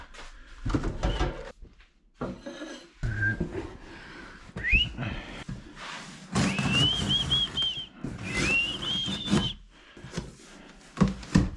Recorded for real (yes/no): yes